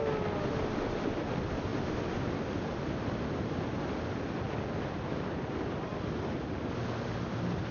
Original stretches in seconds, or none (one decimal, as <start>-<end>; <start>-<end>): 0.0-7.7